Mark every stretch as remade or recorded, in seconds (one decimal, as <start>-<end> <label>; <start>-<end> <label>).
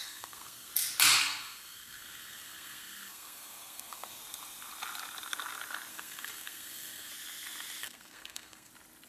0.0-0.7 remade; 0.7-1.2 recorded; 1.2-4.2 remade; 4.2-5.9 recorded; 5.9-7.1 remade; 7.1-7.8 recorded; 7.8-8.7 remade; 8.7-9.1 recorded